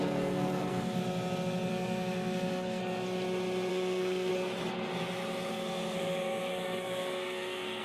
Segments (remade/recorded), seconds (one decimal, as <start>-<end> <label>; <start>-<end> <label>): 0.0-1.0 remade; 1.0-1.7 recorded; 1.7-2.8 remade; 2.8-3.7 recorded; 3.7-4.3 remade; 4.3-5.5 recorded; 5.5-7.8 remade